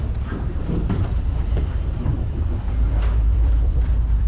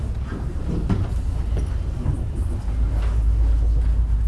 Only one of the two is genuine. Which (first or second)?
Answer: second